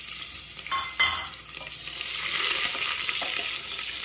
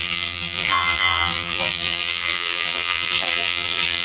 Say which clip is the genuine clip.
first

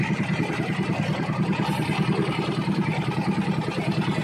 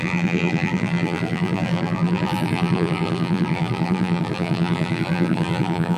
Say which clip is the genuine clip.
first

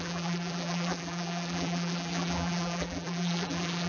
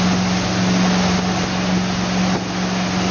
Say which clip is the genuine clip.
second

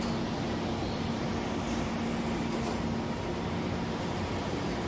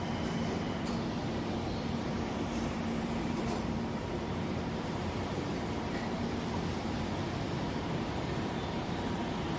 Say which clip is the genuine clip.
first